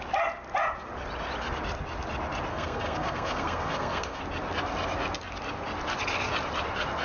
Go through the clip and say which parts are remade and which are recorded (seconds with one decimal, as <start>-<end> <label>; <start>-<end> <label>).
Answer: 0.0-2.5 recorded; 2.5-4.2 remade; 4.2-7.0 recorded

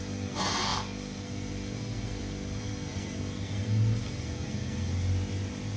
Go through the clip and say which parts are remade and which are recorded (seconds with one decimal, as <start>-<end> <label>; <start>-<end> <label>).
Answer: 0.0-4.9 remade; 4.9-5.8 recorded

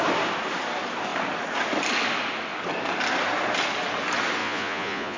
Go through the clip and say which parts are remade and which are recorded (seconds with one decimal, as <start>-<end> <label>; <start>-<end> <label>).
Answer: 0.0-4.4 recorded; 4.4-5.2 remade

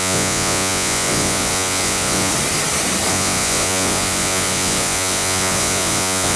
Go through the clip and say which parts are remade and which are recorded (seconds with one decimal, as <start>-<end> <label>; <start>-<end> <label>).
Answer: 0.0-2.3 remade; 2.3-3.1 recorded; 3.1-6.4 remade

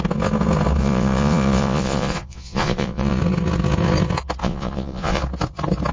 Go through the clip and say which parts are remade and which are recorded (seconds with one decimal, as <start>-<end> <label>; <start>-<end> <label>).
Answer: 0.0-0.8 recorded; 0.8-3.2 remade; 3.2-4.4 recorded; 4.4-5.2 remade; 5.2-5.9 recorded

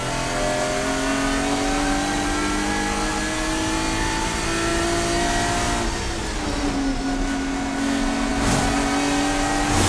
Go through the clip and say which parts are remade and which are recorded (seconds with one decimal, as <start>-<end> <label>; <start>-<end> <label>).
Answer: 0.0-9.9 recorded

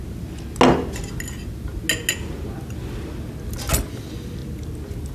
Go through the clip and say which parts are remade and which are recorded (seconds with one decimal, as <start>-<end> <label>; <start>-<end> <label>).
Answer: 0.0-5.1 recorded